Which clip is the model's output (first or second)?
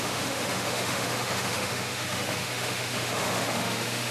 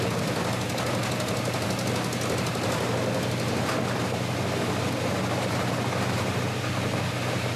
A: first